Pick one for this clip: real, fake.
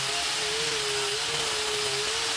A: real